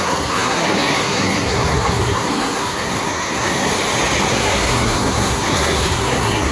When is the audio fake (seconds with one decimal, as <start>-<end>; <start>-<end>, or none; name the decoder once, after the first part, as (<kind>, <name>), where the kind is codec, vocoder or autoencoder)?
0.0-3.7 (codec, SNAC); 4.3-6.5